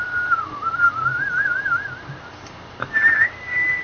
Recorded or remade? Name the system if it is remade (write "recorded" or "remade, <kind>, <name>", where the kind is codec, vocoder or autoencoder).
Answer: recorded